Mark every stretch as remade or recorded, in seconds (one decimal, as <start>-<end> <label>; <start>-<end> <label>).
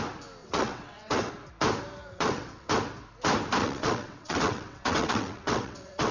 0.0-0.4 recorded; 0.4-1.3 remade; 1.3-2.1 recorded; 2.1-2.7 remade; 2.7-3.6 recorded; 3.6-6.1 remade